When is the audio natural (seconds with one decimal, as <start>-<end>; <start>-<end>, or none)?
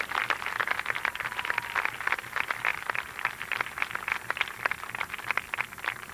0.0-6.1